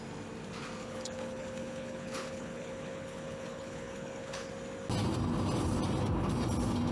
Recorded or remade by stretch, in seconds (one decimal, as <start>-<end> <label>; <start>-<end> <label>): 0.0-0.8 recorded; 0.8-4.5 remade; 4.5-6.9 recorded